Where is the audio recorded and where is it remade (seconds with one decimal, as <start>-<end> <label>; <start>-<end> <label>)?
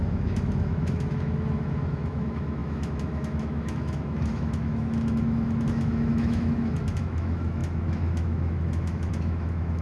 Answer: 0.0-9.8 remade